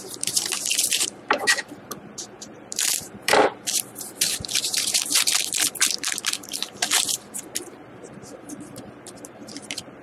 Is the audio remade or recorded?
remade